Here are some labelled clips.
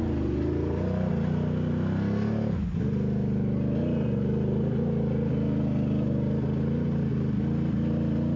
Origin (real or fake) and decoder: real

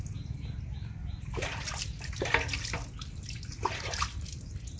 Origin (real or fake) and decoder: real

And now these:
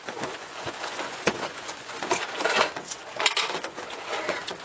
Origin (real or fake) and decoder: fake, vocoder, Vocos